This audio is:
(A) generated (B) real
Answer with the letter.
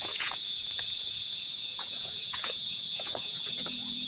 A